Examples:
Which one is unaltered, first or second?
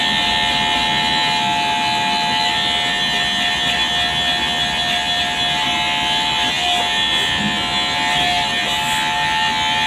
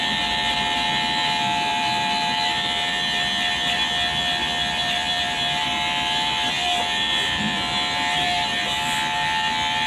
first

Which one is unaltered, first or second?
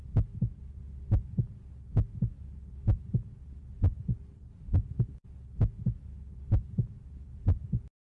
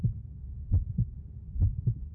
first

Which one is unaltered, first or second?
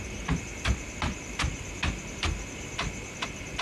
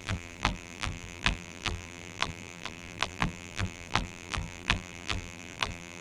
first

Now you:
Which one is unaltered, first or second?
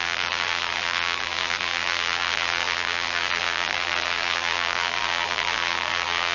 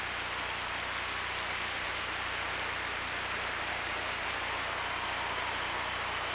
second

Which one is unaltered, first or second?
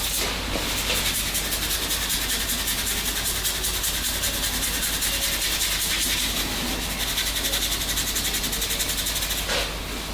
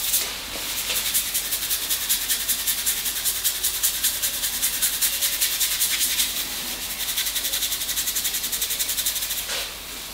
first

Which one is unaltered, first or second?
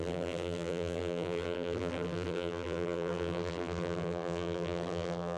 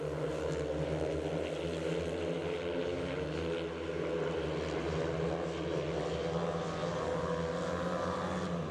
second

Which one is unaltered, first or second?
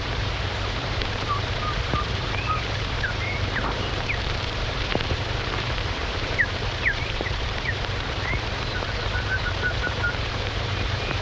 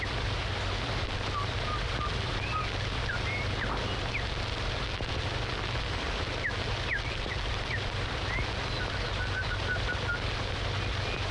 second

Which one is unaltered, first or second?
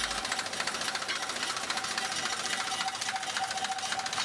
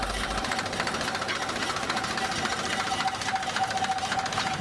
first